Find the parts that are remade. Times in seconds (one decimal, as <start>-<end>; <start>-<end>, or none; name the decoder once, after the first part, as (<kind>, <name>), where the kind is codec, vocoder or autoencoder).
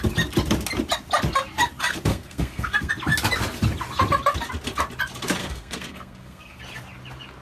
2.1-2.9 (codec, SNAC); 5.4-6.6